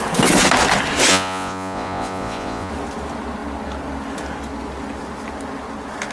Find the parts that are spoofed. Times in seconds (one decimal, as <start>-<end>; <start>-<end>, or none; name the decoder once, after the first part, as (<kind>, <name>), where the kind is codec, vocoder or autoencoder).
1.1-2.7 (vocoder, Vocos)